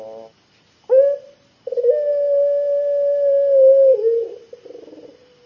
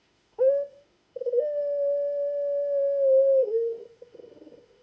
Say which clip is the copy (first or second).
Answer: second